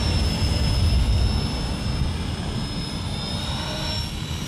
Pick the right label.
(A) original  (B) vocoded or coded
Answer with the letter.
A